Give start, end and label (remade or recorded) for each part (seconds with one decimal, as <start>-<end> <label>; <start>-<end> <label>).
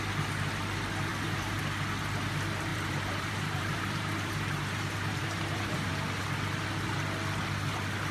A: 0.0-1.1 recorded; 1.1-1.6 remade; 1.6-2.7 recorded; 2.7-5.9 remade; 5.9-8.1 recorded